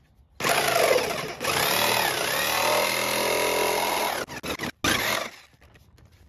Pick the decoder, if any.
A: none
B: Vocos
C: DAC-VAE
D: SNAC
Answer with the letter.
A